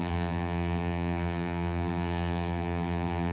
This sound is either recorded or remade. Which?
remade